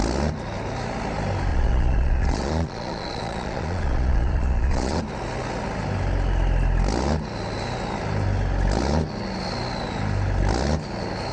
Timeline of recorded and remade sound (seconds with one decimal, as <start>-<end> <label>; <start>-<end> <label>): 0.0-1.5 recorded; 1.5-5.0 remade; 5.0-11.3 recorded